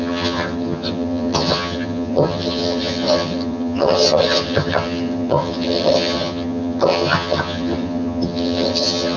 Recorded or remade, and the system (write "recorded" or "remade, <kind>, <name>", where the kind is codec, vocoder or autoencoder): remade, vocoder, HiFi-GAN